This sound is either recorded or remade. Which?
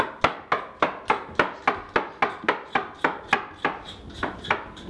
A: recorded